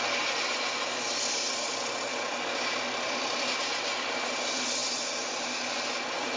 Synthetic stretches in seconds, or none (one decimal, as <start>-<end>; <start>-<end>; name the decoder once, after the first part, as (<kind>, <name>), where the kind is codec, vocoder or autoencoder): none